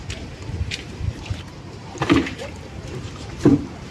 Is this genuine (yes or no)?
no